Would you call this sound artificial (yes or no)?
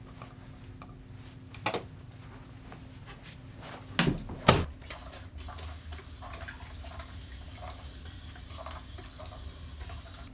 no